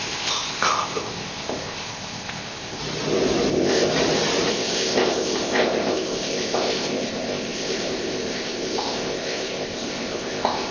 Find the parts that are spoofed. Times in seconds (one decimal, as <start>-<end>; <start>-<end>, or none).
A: 0.0-2.8; 3.5-3.9; 4.5-10.7